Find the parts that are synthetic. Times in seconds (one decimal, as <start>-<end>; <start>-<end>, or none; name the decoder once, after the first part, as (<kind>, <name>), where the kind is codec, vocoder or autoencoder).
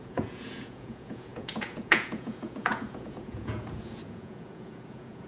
0.0-5.3 (vocoder, Vocos)